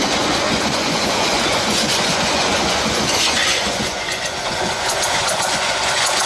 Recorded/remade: remade